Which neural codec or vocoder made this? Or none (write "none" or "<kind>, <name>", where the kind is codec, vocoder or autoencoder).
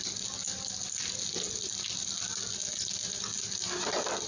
none